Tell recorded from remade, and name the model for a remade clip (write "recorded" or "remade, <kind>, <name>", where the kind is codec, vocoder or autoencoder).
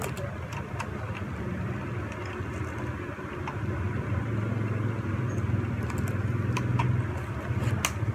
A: recorded